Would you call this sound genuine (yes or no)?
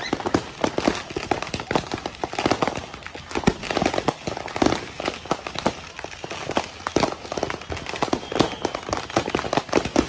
yes